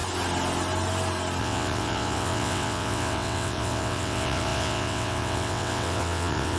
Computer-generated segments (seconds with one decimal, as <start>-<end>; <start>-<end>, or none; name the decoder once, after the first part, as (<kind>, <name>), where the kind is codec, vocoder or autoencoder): 1.4-6.6 (vocoder, WaveNeXt)